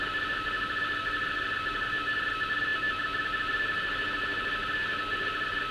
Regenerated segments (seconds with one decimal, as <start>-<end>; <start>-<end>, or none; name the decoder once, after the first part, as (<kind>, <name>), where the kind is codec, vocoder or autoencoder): none